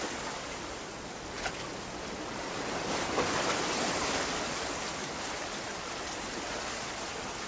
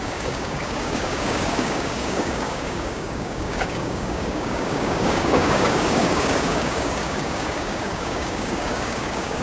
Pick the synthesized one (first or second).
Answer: second